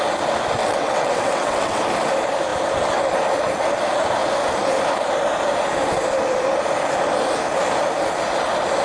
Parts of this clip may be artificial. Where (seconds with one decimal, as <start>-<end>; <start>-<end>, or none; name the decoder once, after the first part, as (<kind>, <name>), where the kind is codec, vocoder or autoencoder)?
0.6-1.8 (vocoder, WaveNeXt)